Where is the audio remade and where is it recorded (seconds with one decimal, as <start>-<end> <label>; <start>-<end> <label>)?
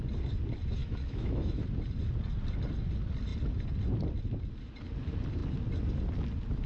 0.0-0.8 recorded; 0.8-1.6 remade; 1.6-6.7 recorded